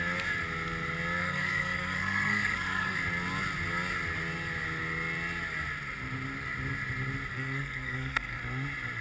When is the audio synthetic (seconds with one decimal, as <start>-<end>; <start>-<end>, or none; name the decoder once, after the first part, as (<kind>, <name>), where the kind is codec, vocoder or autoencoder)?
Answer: 1.2-3.0 (codec, SNAC); 7.3-8.4